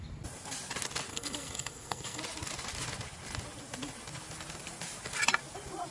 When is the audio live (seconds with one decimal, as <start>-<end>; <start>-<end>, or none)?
0.0-1.1; 2.2-5.9